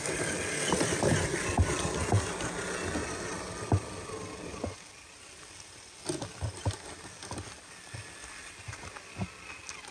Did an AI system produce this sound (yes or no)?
no